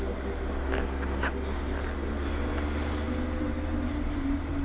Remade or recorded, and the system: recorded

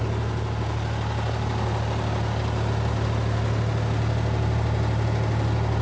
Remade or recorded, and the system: recorded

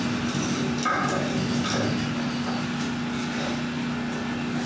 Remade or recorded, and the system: recorded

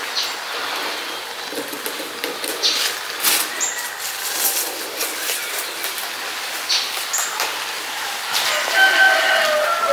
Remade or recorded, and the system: recorded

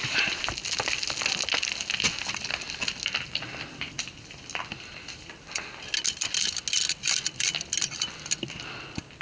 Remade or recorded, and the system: recorded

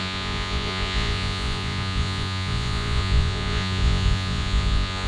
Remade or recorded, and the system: remade, vocoder, Vocos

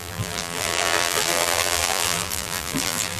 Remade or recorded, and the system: remade, vocoder, BigVGAN v2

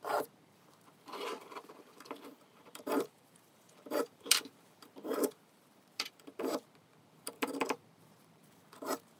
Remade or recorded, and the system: remade, vocoder, BigVGAN v2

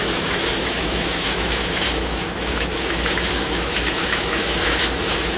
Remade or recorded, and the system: remade, autoencoder, DAC-VAE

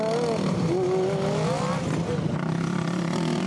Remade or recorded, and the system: recorded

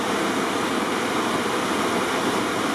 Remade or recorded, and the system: recorded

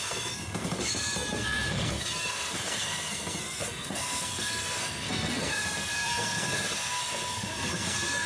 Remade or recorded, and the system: remade, codec, SNAC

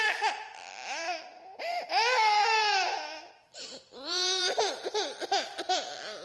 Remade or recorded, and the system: remade, vocoder, BigVGAN v2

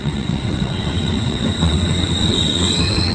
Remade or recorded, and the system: remade, vocoder, WaveNeXt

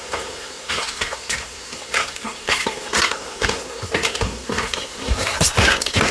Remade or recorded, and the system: remade, codec, SNAC